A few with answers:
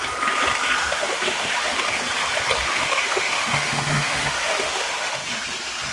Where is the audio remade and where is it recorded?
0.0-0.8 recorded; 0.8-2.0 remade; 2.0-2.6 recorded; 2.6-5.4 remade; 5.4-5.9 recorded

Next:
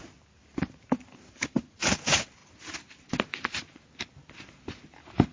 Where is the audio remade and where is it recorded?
0.0-2.4 remade; 2.4-3.1 recorded; 3.1-5.3 remade

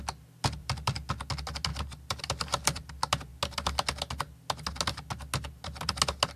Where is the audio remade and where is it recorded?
0.0-0.6 recorded; 0.6-1.1 remade; 1.1-1.7 recorded; 1.7-2.9 remade; 2.9-6.4 recorded

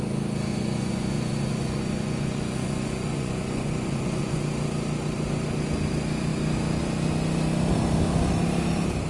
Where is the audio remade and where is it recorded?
0.0-0.5 recorded; 0.5-4.4 remade; 4.4-9.1 recorded

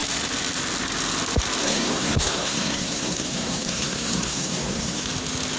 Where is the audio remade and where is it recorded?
0.0-1.6 recorded; 1.6-5.0 remade; 5.0-5.6 recorded